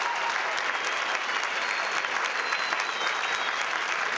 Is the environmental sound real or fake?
real